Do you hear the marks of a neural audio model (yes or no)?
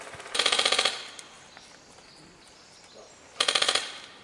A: no